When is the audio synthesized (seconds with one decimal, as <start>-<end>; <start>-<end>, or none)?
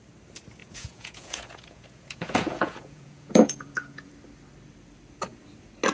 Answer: 0.6-4.1